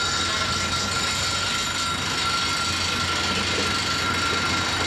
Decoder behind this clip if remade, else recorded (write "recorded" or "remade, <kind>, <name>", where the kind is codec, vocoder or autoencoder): recorded